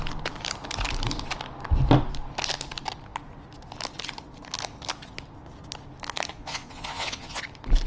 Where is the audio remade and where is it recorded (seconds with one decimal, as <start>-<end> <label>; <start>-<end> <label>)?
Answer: 0.0-6.3 recorded; 6.3-7.4 remade; 7.4-7.9 recorded